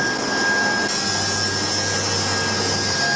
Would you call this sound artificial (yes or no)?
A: no